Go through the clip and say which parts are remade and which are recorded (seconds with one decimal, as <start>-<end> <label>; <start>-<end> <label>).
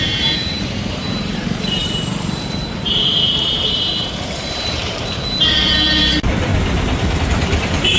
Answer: 0.0-6.5 remade; 6.5-7.2 recorded; 7.2-8.0 remade